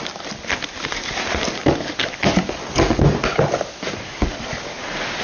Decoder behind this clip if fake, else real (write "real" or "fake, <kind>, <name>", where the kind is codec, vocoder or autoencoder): real